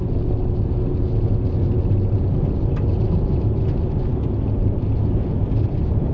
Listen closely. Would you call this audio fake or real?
real